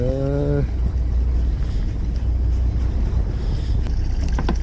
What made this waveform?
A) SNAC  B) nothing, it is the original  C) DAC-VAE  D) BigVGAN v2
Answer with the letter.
B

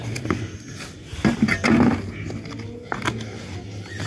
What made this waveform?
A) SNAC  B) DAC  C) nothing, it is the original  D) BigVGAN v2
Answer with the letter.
C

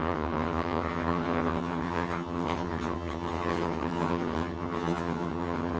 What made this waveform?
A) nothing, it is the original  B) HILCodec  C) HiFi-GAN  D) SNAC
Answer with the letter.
C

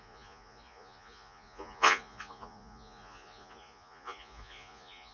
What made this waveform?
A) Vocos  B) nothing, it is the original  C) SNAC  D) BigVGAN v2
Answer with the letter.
A